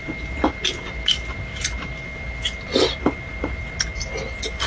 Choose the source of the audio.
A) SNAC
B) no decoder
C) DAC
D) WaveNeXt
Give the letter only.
B